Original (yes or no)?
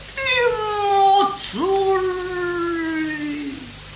yes